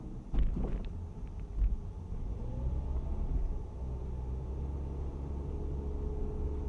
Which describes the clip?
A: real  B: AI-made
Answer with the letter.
A